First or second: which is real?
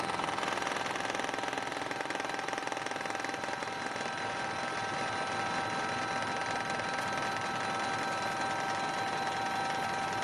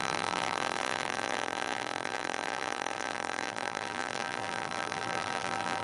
first